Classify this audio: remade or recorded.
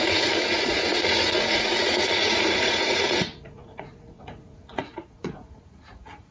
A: remade